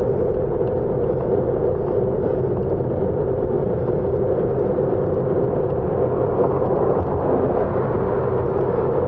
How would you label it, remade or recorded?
recorded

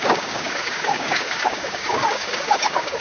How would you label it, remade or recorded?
remade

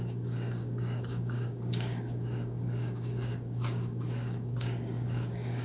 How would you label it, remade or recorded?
remade